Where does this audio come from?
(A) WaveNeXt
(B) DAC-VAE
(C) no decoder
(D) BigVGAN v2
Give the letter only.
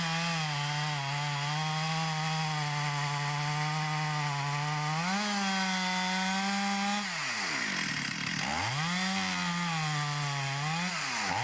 C